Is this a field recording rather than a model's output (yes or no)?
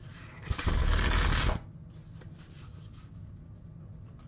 yes